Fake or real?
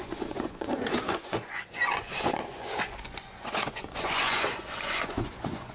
fake